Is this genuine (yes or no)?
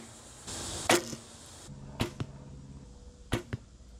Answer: yes